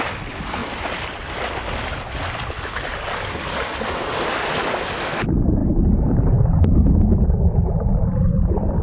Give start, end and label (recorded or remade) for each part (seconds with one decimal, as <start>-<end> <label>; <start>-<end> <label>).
0.0-5.6 recorded; 5.6-8.3 remade; 8.3-8.8 recorded